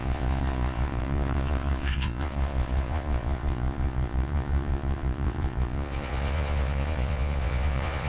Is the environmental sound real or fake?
fake